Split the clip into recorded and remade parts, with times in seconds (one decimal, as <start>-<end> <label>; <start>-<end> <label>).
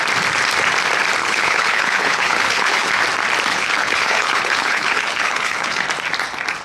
0.0-1.2 recorded; 1.2-2.9 remade; 2.9-3.5 recorded; 3.5-5.8 remade; 5.8-6.6 recorded